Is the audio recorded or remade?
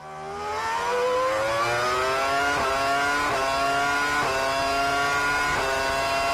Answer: recorded